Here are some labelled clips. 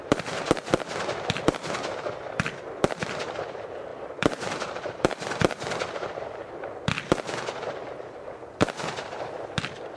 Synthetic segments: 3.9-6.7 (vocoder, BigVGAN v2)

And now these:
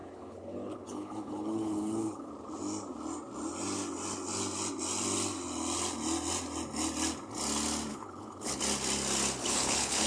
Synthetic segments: 0.0-2.3 (codec, HILCodec); 7.9-8.6; 9.4-10.1

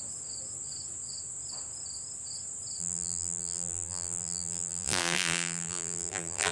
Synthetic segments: 2.8-6.5 (vocoder, BigVGAN v2)

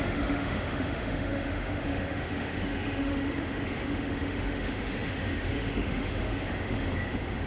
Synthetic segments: 0.0-7.5 (autoencoder, DAC-VAE)